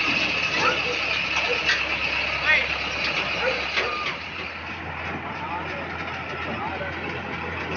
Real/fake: real